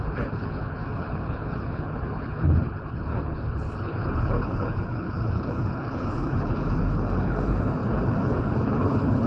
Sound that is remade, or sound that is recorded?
remade